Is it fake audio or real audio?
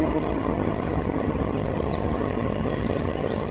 fake